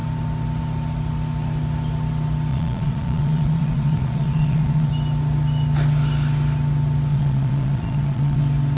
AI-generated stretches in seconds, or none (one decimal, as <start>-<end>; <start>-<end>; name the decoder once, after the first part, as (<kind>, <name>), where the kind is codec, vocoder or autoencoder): 2.5-4.9 (vocoder, Vocos); 7.1-8.4